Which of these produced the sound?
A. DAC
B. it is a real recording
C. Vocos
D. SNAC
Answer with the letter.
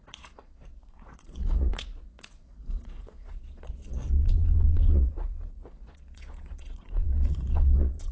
C